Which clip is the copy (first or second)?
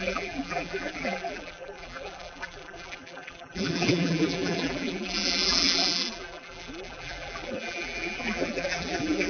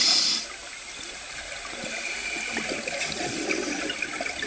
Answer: first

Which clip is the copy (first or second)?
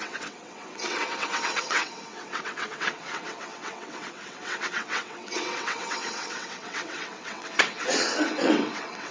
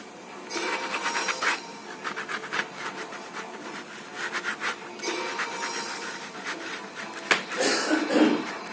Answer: first